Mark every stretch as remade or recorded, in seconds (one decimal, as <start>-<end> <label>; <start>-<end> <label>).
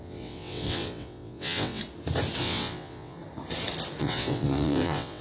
0.0-1.8 remade; 1.8-2.4 recorded; 2.4-3.2 remade; 3.2-4.0 recorded; 4.0-5.2 remade